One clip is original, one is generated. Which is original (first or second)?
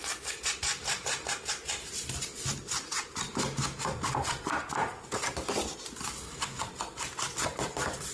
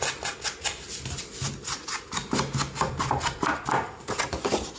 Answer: second